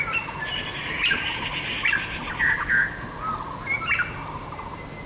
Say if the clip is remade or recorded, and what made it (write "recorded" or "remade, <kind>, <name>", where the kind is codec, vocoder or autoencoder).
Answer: recorded